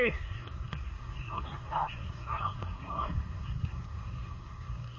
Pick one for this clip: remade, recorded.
remade